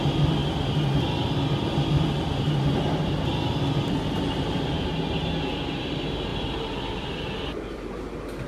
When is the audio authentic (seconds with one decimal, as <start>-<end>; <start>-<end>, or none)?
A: 0.0-6.3; 8.0-8.5